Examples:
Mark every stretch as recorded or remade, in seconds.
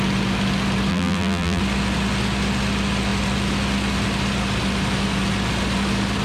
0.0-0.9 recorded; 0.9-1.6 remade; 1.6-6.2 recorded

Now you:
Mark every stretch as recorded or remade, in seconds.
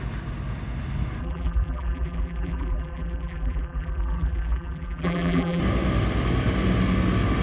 0.0-1.2 recorded; 1.2-5.6 remade; 5.6-7.4 recorded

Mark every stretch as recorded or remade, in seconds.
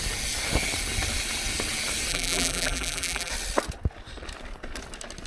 0.0-2.1 recorded; 2.1-3.3 remade; 3.3-5.3 recorded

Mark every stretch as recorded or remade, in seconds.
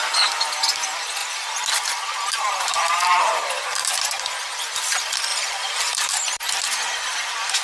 0.0-2.7 recorded; 2.7-4.0 remade; 4.0-5.3 recorded; 5.3-6.1 remade; 6.1-7.6 recorded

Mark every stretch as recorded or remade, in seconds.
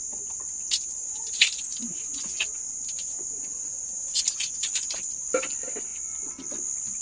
0.0-1.0 recorded; 1.0-5.0 remade; 5.0-7.0 recorded